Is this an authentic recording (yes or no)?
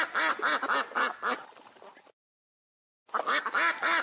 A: yes